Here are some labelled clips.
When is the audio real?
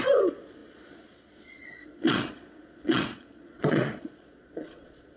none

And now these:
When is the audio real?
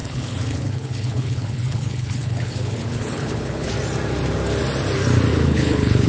3.7-5.3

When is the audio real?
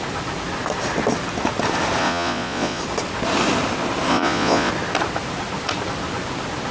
0.0-2.0; 2.8-4.1; 4.7-6.7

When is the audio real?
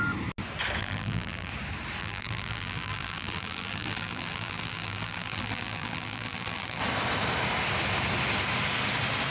0.0-0.8; 1.5-2.0; 6.8-9.3